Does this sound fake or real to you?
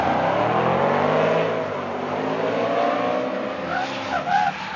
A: real